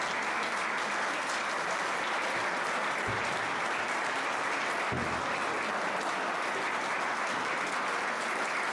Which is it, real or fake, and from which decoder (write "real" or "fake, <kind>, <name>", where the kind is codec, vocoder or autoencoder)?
real